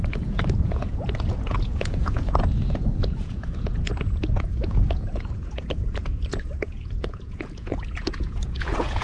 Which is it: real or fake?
fake